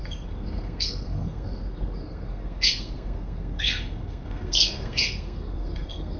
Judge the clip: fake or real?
fake